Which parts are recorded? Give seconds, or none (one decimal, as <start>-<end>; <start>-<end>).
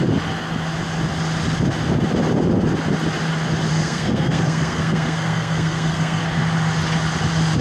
0.0-3.7; 6.2-7.6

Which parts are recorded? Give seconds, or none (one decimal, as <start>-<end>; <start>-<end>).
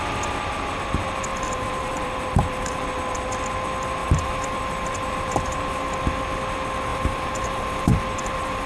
0.0-1.3; 2.8-4.0; 5.9-6.9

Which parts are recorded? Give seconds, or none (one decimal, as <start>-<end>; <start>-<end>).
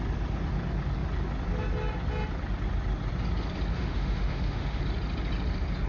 0.0-3.7; 4.8-5.9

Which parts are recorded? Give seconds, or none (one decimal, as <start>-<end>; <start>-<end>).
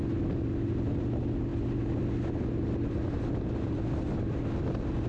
0.0-5.1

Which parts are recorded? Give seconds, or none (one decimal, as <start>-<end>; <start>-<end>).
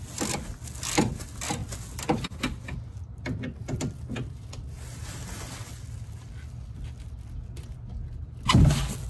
0.0-9.1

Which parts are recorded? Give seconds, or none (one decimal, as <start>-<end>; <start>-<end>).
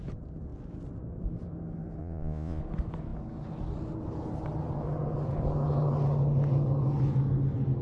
0.0-2.0; 2.6-7.8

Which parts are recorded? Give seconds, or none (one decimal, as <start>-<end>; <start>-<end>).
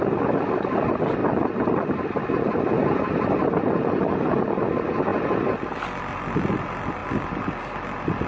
0.0-8.3